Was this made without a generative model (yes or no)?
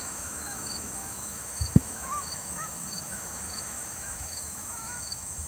no